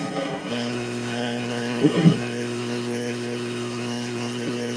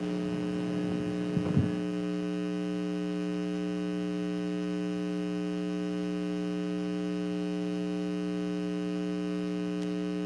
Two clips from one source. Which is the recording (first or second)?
second